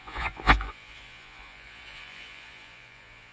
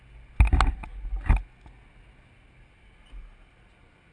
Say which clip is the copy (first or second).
first